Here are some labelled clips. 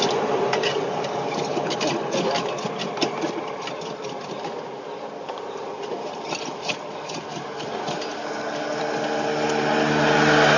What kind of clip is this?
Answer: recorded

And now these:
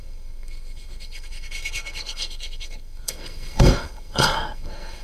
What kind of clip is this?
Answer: remade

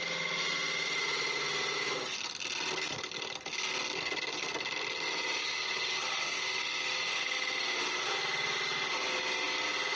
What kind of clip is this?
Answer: recorded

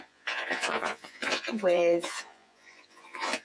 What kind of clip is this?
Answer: remade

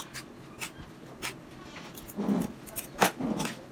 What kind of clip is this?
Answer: recorded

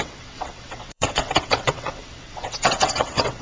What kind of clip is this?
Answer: remade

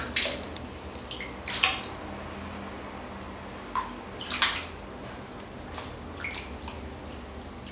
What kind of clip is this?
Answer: recorded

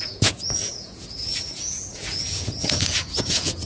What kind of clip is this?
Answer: remade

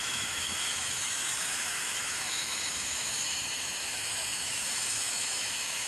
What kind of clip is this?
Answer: remade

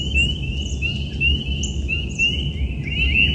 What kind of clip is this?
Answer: recorded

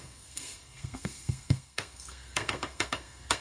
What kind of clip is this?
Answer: remade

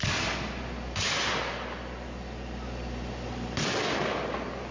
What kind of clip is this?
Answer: recorded